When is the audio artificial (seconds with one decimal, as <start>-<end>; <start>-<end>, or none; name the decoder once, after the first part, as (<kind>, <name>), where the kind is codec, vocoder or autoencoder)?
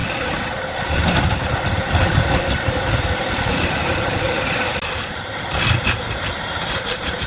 none